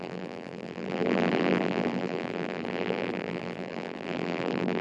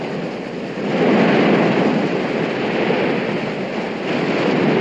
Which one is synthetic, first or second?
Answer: first